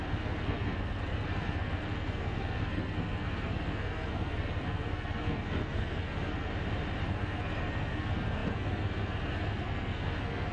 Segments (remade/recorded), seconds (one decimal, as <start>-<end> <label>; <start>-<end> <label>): 0.0-6.5 remade; 6.5-7.1 recorded; 7.1-10.5 remade